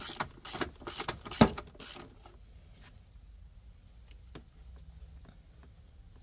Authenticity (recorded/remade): recorded